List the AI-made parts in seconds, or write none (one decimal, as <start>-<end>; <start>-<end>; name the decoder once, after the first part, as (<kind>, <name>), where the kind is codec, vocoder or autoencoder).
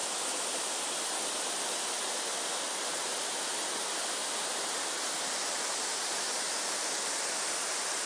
none